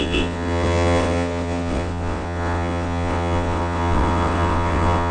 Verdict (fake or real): fake